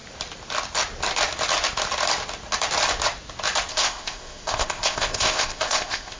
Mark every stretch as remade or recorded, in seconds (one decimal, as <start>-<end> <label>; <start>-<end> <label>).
0.0-3.7 recorded; 3.7-6.2 remade